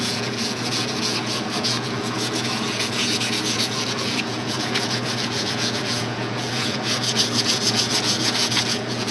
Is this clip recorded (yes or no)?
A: no